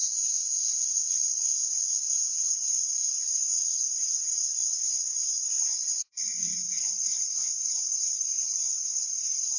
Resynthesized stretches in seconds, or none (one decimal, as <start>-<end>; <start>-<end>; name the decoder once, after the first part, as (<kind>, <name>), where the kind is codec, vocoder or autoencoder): 1.1-1.6 (vocoder, Vocos); 2.5-9.6